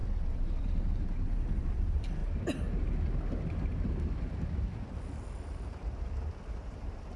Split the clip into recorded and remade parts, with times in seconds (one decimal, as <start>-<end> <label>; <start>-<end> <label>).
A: 0.0-2.2 remade; 2.2-6.5 recorded; 6.5-7.2 remade